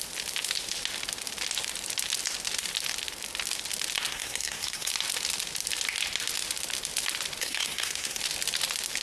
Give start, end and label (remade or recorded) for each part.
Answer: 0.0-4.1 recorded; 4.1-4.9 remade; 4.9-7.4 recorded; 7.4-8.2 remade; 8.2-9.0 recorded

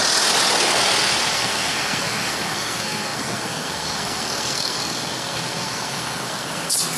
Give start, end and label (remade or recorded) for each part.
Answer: 0.0-1.3 recorded; 1.3-7.0 remade

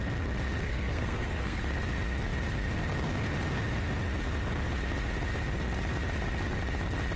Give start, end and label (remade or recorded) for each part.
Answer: 0.0-0.6 recorded; 0.6-1.6 remade; 1.6-7.2 recorded

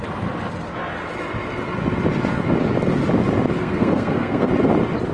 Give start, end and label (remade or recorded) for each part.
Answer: 0.0-3.6 recorded; 3.6-4.5 remade; 4.5-5.1 recorded

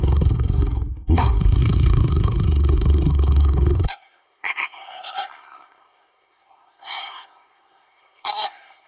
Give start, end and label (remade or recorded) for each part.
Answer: 0.0-8.9 remade